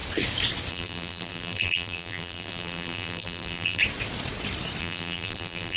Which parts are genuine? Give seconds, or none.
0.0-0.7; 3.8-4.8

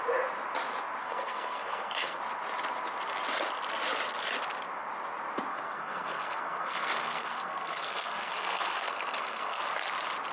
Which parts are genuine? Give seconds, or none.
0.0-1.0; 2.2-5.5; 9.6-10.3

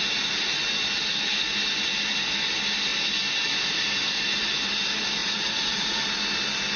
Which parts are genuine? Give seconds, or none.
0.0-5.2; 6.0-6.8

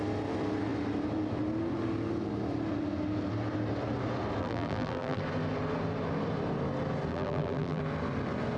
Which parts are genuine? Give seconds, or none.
0.0-4.4; 5.2-7.1; 7.8-8.6

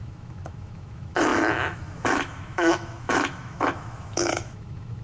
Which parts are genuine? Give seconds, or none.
none

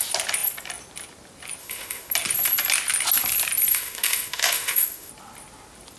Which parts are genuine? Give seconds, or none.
0.0-1.6; 2.1-3.7; 5.1-6.0